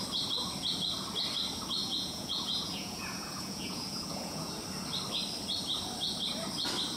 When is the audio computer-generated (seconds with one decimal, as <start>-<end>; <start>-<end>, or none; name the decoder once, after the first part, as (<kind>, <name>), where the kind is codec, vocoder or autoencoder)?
1.8-4.5 (vocoder, Vocos)